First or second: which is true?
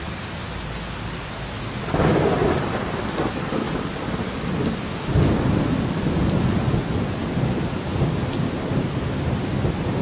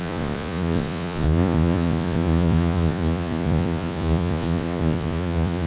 first